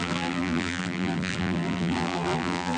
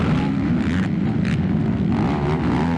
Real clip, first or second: second